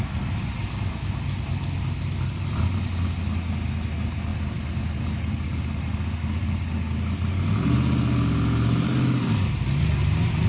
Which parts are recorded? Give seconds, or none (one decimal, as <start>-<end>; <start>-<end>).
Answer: 0.0-10.5